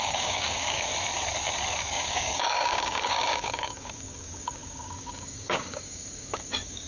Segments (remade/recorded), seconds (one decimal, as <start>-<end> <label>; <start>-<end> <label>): 0.0-0.9 remade; 0.9-1.9 recorded; 1.9-6.9 remade